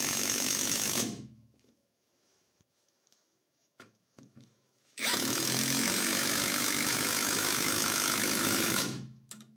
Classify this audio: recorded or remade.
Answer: remade